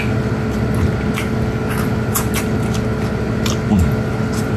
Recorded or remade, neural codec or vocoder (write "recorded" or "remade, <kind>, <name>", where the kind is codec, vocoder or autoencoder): recorded